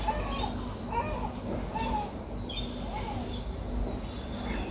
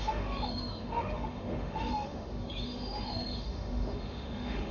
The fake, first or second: second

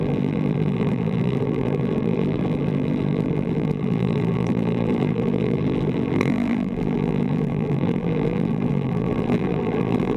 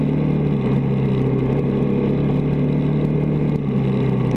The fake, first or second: first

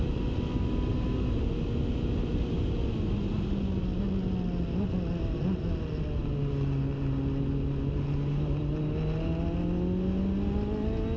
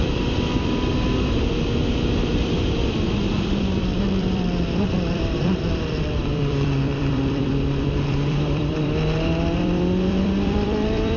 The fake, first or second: second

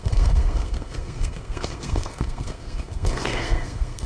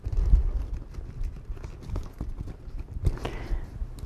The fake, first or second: first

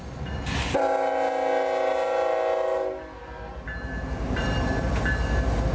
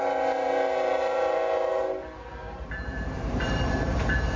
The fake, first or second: second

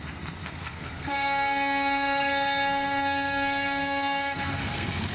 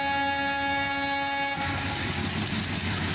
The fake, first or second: first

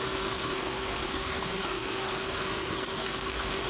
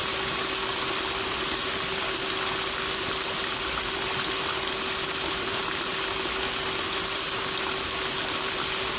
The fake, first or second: first